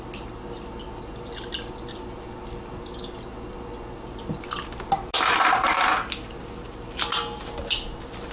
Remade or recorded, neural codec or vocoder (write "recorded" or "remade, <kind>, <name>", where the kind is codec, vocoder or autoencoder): recorded